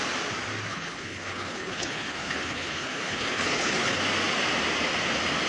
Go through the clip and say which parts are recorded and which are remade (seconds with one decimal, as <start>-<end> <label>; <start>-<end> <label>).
0.0-0.7 recorded; 0.7-4.0 remade; 4.0-5.5 recorded